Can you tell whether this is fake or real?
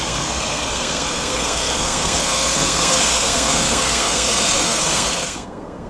fake